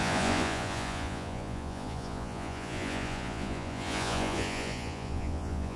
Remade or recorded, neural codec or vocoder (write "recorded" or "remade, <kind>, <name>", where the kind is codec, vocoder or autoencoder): remade, vocoder, Vocos